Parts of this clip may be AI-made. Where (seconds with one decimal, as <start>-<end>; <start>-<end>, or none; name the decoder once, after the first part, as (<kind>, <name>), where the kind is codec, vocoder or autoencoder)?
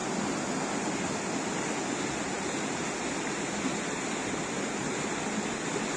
none